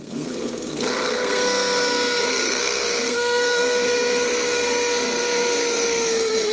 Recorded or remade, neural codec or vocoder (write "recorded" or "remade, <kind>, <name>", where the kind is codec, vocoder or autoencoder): remade, codec, SNAC